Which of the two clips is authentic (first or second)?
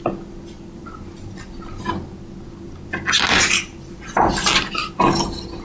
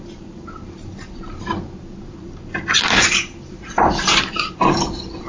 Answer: first